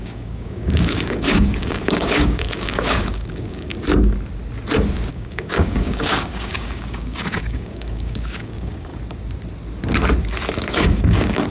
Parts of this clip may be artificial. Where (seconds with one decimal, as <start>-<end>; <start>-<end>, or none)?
0.0-3.7; 5.1-8.9; 10.7-11.5